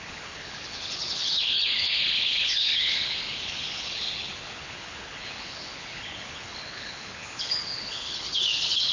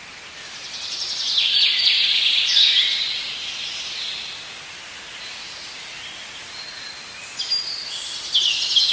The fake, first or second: first